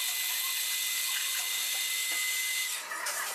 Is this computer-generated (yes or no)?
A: no